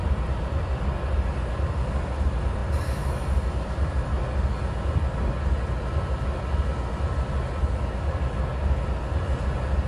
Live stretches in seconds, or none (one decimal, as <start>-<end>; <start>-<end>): 0.0-9.9